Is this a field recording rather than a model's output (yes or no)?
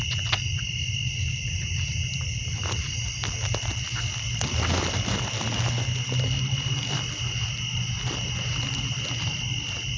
yes